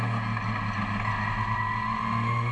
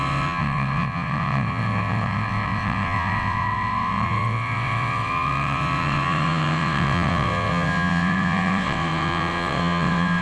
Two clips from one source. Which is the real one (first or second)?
first